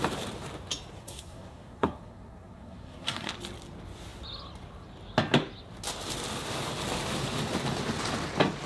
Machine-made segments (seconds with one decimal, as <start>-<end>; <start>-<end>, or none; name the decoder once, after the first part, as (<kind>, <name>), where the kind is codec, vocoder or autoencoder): 1.0-3.3 (codec, SNAC)